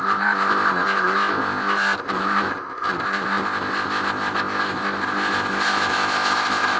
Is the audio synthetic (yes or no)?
yes